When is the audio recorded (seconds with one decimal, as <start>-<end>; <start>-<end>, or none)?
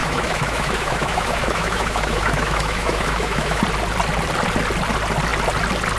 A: 3.6-6.0